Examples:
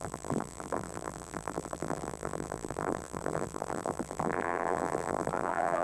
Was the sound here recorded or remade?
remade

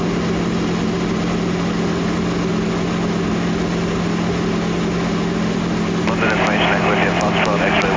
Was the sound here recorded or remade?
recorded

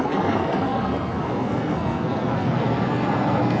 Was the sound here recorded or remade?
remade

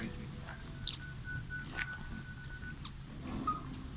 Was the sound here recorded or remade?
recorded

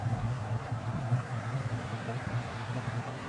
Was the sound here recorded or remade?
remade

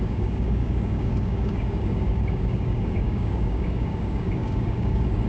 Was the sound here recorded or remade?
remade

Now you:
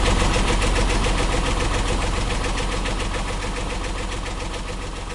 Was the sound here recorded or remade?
recorded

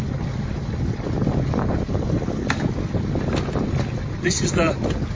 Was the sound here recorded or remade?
recorded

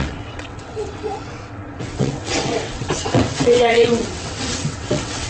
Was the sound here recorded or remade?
remade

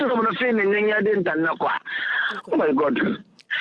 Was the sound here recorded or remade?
recorded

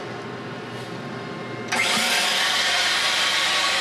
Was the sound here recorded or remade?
recorded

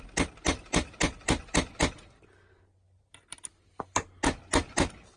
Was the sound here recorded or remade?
recorded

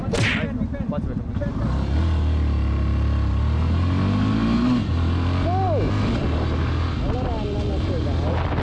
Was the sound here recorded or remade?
recorded